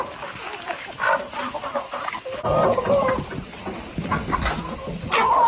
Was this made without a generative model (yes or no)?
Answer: yes